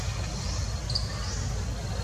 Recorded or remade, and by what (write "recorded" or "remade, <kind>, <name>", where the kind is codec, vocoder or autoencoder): recorded